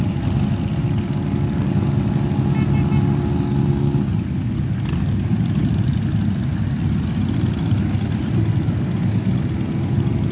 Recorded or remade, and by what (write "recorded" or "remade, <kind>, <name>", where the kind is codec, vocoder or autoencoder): recorded